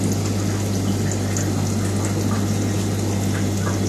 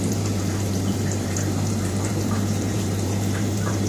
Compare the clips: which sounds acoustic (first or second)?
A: first